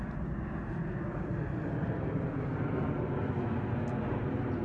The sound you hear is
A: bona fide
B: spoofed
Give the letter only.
A